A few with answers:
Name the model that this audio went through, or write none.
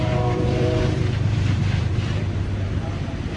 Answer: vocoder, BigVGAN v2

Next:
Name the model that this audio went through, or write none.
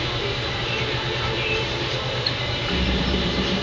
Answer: vocoder, BigVGAN v2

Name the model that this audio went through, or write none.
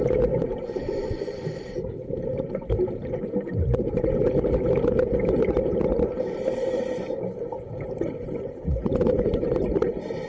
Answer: vocoder, BigVGAN v2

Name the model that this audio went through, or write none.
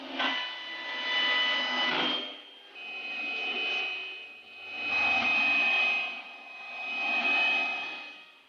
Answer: none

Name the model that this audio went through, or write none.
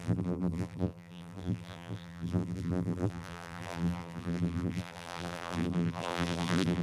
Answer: vocoder, BigVGAN v2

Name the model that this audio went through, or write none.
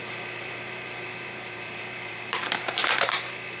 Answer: vocoder, BigVGAN v2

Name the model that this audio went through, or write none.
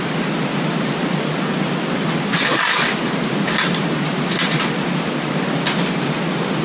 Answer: vocoder, BigVGAN v2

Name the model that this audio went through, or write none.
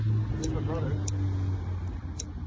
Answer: none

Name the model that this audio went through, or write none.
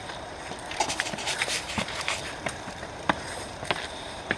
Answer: vocoder, BigVGAN v2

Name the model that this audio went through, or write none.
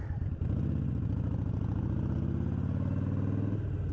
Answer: none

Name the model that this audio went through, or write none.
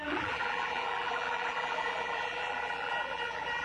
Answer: vocoder, BigVGAN v2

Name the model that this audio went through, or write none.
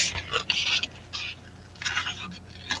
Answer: none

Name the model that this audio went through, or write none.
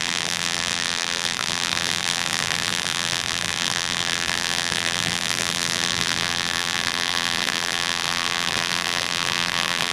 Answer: vocoder, BigVGAN v2